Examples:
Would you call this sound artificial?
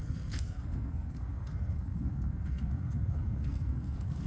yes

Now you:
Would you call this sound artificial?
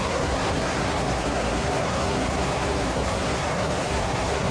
yes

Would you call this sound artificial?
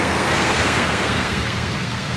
yes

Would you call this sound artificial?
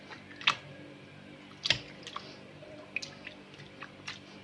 no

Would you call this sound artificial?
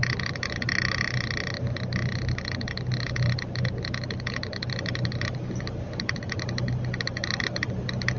no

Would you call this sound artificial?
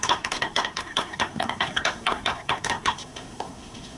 yes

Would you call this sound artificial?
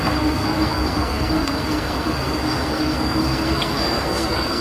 yes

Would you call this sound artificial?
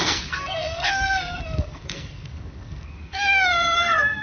yes